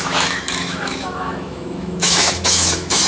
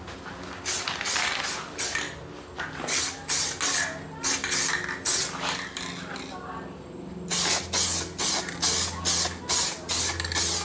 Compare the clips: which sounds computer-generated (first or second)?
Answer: first